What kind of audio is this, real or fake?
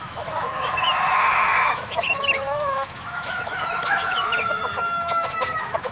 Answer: fake